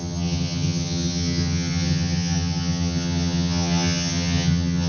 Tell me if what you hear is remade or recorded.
remade